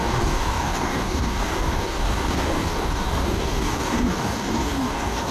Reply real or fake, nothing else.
fake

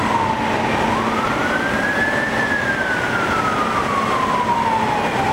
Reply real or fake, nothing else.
real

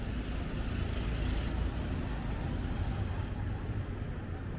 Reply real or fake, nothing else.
real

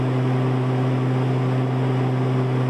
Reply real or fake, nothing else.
real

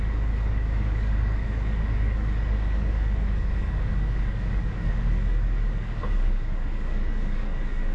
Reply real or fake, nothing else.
fake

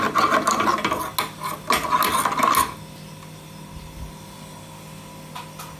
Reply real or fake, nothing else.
real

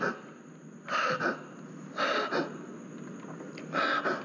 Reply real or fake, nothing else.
real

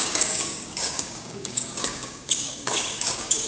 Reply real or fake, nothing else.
fake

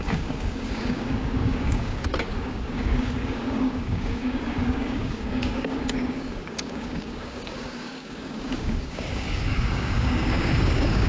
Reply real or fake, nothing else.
fake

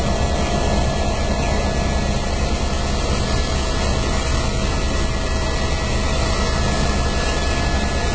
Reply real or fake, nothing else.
real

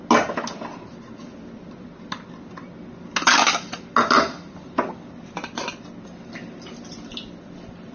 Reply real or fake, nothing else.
real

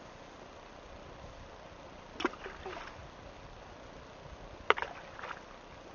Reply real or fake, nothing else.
real